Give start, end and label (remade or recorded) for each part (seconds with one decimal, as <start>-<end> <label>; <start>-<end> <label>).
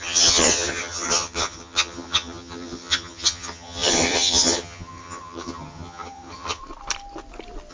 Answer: 0.0-6.6 remade; 6.6-7.7 recorded